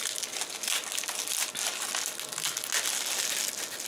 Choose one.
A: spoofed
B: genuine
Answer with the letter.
B